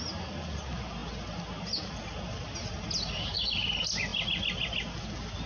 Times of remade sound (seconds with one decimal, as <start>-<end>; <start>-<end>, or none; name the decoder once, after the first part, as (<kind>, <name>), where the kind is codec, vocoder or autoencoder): none